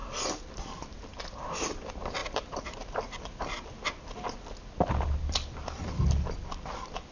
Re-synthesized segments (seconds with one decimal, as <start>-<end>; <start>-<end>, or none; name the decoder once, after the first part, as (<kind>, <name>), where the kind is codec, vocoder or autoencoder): 2.2-3.7 (vocoder, BigVGAN v2)